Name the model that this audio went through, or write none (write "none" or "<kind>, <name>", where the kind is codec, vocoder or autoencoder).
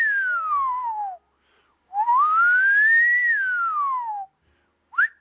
none